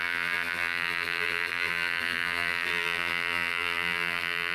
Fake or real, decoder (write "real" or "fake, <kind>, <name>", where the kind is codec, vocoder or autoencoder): fake, vocoder, BigVGAN v2